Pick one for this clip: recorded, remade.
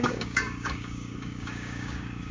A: remade